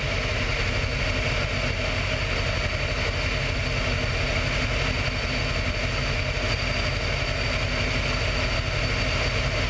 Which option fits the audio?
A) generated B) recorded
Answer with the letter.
B